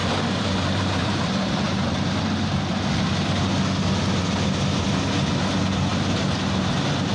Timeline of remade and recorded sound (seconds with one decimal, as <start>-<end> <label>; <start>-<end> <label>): 0.0-2.2 remade; 2.2-7.1 recorded